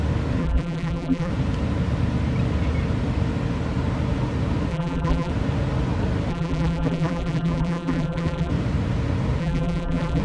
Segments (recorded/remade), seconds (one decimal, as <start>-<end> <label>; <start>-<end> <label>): 0.0-0.4 recorded; 0.4-1.3 remade; 1.3-4.7 recorded; 4.7-5.3 remade; 5.3-6.3 recorded; 6.3-8.5 remade; 8.5-9.4 recorded; 9.4-10.2 remade